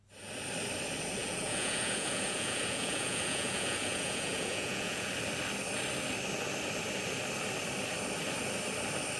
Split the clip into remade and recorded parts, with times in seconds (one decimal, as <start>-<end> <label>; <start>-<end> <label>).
0.0-1.2 recorded; 1.2-5.1 remade; 5.1-9.2 recorded